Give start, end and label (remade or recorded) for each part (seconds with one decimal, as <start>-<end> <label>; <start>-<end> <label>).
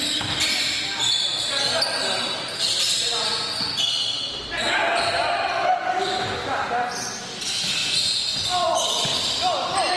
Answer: 0.0-7.8 recorded; 7.8-8.5 remade; 8.5-10.0 recorded